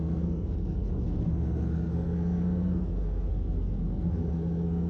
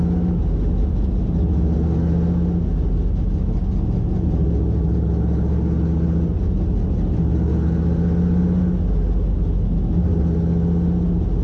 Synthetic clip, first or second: first